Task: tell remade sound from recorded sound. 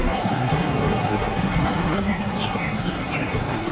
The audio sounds remade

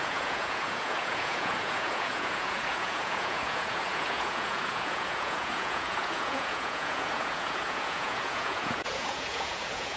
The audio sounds remade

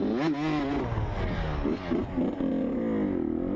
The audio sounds recorded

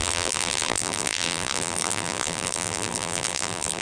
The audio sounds remade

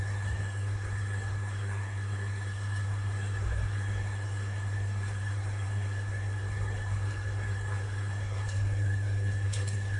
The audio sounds remade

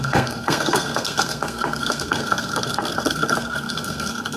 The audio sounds remade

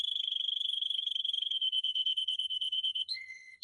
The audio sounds remade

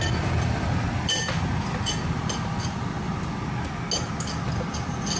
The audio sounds recorded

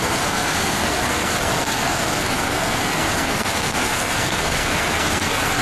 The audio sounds remade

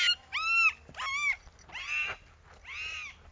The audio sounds recorded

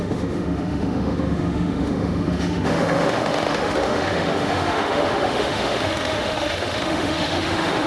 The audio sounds remade